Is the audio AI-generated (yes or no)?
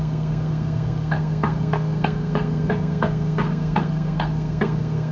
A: yes